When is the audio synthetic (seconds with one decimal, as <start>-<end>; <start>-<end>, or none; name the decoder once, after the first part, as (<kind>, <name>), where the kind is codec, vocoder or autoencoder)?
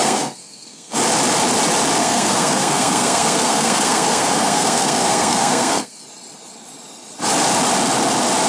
0.0-1.0 (codec, SNAC); 2.0-6.0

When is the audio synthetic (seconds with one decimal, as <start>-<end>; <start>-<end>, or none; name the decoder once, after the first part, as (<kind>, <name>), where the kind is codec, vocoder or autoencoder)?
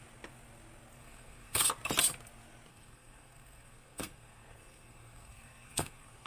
1.0-1.7 (codec, SNAC); 2.7-6.3